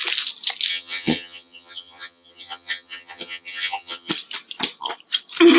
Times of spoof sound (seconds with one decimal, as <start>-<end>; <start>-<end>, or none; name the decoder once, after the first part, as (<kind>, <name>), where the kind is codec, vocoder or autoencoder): 0.7-4.1 (vocoder, HiFi-GAN)